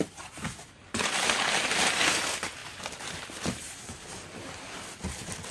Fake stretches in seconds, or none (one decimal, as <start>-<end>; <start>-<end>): none